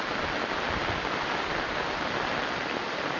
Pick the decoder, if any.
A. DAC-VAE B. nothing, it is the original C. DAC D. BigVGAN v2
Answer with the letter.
B